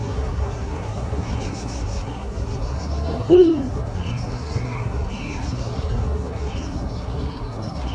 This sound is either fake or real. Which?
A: fake